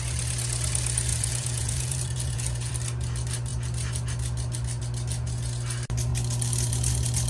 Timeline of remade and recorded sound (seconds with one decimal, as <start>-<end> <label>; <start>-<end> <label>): 0.0-1.1 recorded; 1.1-2.7 remade; 2.7-7.3 recorded

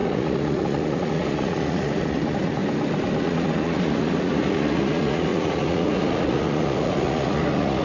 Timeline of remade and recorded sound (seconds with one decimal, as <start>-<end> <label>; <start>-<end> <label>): 0.0-2.6 remade; 2.6-3.2 recorded; 3.2-7.8 remade

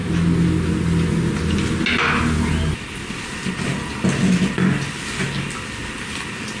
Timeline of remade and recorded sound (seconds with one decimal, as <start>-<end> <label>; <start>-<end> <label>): 0.0-6.6 recorded

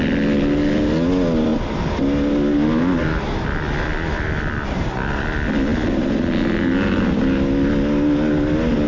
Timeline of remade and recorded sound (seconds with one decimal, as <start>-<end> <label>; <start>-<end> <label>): 0.0-8.9 recorded